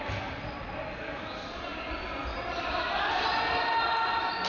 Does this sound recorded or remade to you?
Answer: recorded